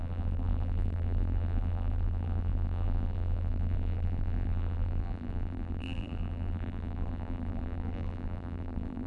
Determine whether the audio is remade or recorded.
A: remade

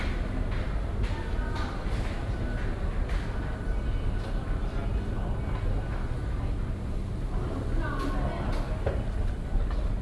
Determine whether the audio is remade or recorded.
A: recorded